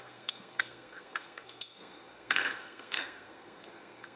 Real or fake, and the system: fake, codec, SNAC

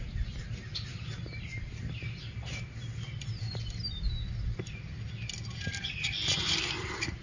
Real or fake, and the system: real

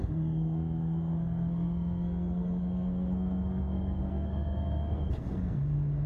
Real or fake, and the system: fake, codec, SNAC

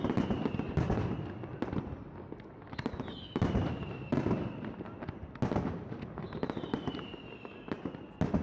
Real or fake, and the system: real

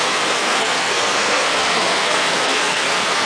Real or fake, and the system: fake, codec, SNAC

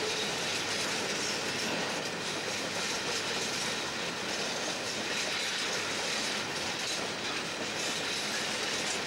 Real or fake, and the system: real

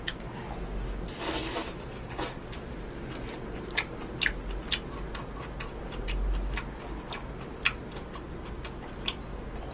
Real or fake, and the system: real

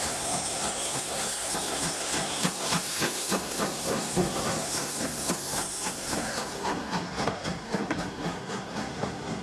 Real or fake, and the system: fake, codec, SNAC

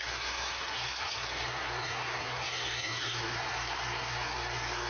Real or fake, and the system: fake, codec, SNAC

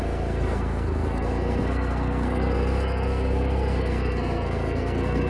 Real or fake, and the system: fake, codec, SNAC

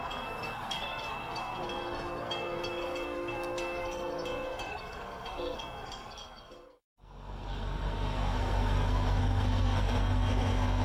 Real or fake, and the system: fake, codec, SNAC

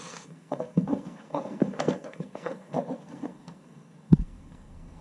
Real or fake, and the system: fake, codec, SNAC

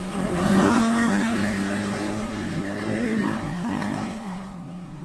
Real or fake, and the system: fake, codec, SNAC